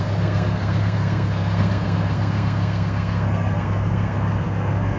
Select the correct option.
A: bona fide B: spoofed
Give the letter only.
B